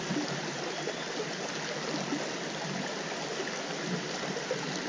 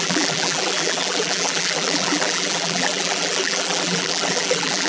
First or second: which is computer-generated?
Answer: second